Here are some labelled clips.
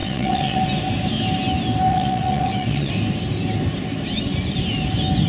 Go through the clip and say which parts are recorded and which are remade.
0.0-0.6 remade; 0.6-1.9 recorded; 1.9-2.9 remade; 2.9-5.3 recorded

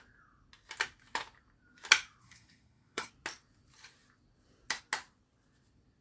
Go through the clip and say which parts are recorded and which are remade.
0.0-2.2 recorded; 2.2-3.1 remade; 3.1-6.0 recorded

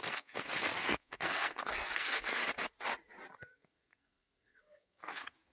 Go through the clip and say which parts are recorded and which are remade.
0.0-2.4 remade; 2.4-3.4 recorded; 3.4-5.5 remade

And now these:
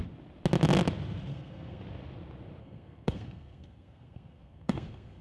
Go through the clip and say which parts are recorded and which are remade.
0.0-1.3 recorded; 1.3-1.8 remade; 1.8-2.6 recorded; 2.6-5.2 remade

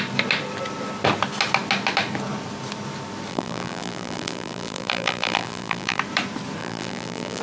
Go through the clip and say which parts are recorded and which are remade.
0.0-3.3 recorded; 3.3-6.0 remade; 6.0-6.6 recorded; 6.6-7.4 remade